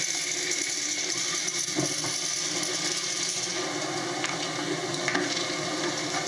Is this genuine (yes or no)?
yes